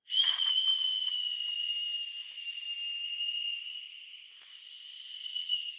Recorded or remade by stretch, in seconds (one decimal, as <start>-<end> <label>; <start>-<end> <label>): 0.0-1.7 remade; 1.7-5.2 recorded; 5.2-5.8 remade